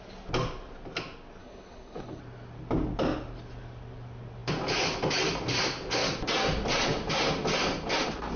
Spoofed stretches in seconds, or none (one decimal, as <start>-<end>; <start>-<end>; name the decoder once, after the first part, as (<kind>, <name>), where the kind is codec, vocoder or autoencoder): 1.4-2.2 (codec, HILCodec)